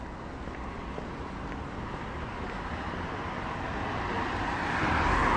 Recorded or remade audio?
recorded